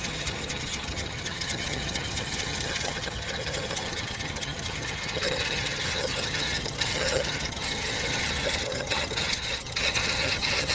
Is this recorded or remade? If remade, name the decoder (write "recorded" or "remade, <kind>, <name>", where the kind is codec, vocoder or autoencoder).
remade, vocoder, HiFi-GAN